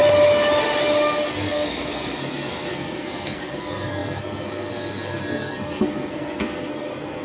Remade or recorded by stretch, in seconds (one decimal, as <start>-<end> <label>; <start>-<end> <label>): 0.0-1.3 recorded; 1.3-7.2 remade